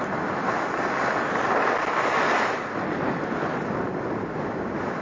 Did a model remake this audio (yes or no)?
no